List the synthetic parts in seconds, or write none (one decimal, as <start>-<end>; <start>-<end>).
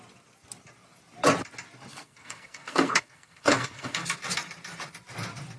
1.9-4.2